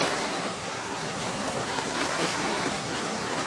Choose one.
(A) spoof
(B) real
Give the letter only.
A